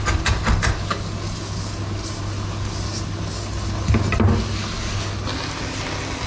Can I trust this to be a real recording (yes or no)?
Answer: yes